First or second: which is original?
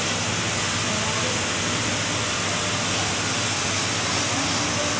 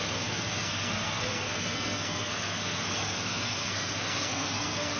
first